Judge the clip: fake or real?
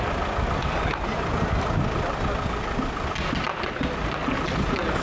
real